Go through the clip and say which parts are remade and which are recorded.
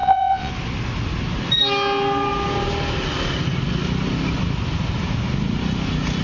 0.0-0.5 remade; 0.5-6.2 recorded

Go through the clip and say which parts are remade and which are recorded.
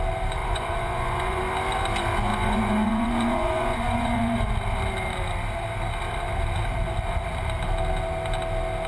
0.0-0.4 recorded; 0.4-1.4 remade; 1.4-2.3 recorded; 2.3-4.5 remade; 4.5-8.9 recorded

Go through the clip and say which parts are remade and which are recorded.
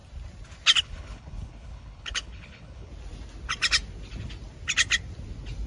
0.0-0.8 recorded; 0.8-2.9 remade; 2.9-5.7 recorded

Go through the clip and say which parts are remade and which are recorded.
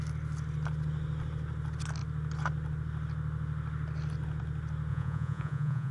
0.0-4.9 recorded; 4.9-5.9 remade